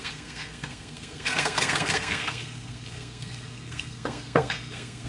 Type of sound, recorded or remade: remade